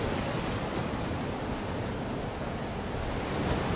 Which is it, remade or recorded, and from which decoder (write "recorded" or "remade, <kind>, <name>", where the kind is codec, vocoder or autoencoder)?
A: recorded